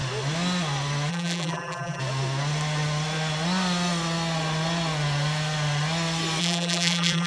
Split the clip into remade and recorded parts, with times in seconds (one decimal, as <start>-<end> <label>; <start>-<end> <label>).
0.0-1.1 recorded; 1.1-2.0 remade; 2.0-6.4 recorded; 6.4-7.3 remade